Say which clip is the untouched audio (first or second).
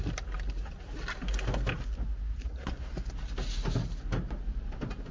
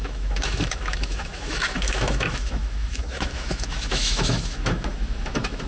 first